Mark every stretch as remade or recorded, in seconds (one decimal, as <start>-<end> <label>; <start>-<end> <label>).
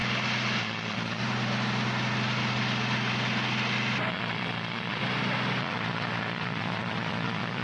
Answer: 0.0-0.6 recorded; 0.6-1.2 remade; 1.2-4.1 recorded; 4.1-5.0 remade; 5.0-5.6 recorded; 5.6-7.6 remade